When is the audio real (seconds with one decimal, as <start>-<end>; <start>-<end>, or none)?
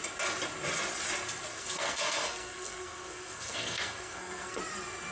0.0-1.5; 4.6-5.1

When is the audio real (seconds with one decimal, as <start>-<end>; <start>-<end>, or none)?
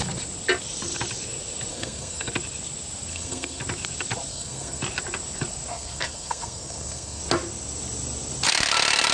0.0-1.7; 2.3-3.1; 3.6-4.3; 4.8-5.7; 7.2-9.1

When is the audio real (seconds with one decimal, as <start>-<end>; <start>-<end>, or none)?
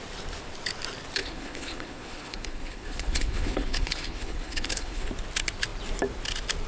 0.0-1.2; 5.1-6.7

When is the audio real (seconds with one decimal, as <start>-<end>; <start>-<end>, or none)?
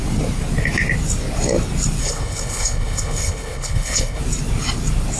0.0-2.0; 4.2-5.2